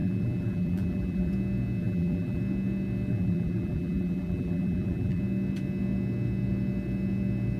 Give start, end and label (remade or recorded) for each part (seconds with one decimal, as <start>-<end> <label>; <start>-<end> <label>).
0.0-1.3 remade; 1.3-1.8 recorded; 1.8-2.4 remade; 2.4-3.1 recorded; 3.1-5.2 remade; 5.2-7.6 recorded